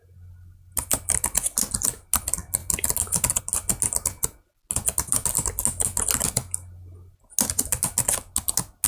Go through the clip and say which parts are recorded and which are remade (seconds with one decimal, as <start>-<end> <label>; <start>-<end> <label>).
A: 0.0-8.9 recorded